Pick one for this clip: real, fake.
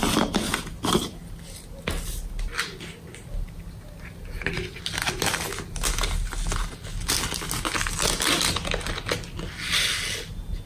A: real